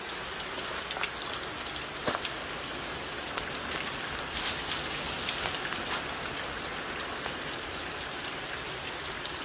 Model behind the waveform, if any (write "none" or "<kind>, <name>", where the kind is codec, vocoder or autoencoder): none